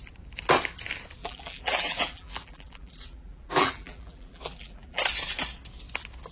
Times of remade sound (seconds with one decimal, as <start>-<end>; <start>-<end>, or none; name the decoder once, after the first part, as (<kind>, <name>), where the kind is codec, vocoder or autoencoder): 1.2-5.0 (vocoder, BigVGAN v2)

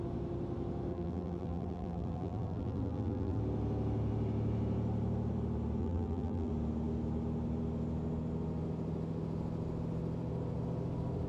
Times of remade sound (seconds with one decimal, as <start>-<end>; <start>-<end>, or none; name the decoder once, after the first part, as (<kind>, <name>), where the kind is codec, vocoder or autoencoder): 0.9-3.4 (vocoder, BigVGAN v2); 5.8-6.5

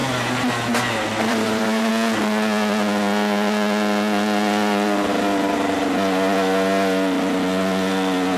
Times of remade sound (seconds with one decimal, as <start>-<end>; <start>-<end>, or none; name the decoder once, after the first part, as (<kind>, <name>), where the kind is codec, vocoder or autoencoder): 0.0-1.9 (vocoder, BigVGAN v2)

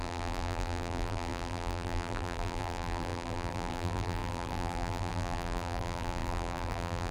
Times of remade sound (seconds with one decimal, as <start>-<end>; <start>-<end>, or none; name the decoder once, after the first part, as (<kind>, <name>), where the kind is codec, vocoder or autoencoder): 0.0-7.1 (vocoder, BigVGAN v2)

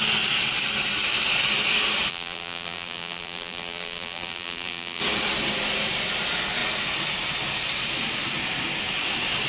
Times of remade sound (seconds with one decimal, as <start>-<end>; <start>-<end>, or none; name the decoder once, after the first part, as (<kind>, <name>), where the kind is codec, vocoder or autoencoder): 2.1-5.0 (vocoder, BigVGAN v2)